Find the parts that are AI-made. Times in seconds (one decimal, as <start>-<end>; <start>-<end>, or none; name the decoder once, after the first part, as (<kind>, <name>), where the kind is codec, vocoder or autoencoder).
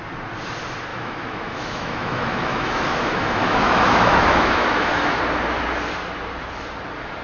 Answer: 0.9-5.2 (autoencoder, DAC-VAE)